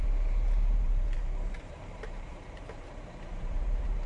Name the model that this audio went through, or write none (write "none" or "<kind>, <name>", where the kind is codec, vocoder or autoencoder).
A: vocoder, BigVGAN v2